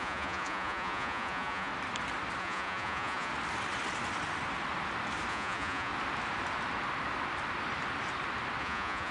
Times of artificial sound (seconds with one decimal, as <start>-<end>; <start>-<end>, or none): 0.0-1.7; 2.4-3.3; 5.3-5.9; 8.6-9.1